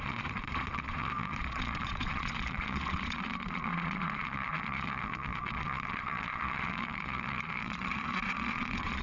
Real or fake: fake